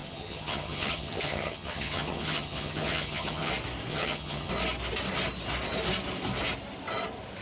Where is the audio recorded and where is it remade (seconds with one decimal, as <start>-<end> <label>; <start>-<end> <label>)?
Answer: 0.0-3.5 remade; 3.5-3.9 recorded; 3.9-4.5 remade; 4.5-7.4 recorded